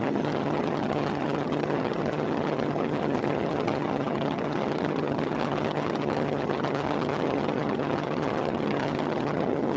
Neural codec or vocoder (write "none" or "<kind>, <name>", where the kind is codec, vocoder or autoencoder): vocoder, HiFi-GAN